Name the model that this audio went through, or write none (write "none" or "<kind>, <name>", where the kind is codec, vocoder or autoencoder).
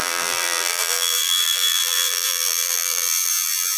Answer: vocoder, BigVGAN v2